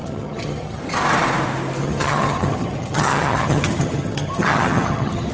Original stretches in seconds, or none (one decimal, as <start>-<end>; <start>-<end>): 0.8-1.8